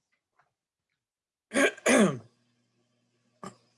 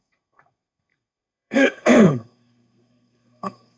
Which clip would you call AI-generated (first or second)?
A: second